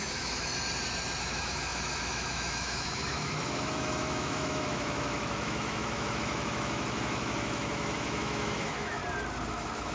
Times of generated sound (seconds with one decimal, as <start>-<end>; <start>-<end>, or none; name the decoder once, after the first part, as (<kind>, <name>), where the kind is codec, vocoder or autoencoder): 0.0-0.5 (autoencoder, DAC-VAE); 1.2-9.0; 9.5-9.9